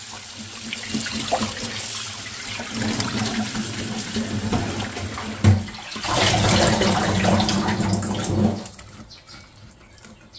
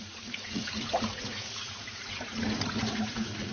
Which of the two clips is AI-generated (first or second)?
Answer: second